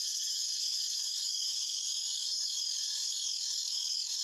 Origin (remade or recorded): remade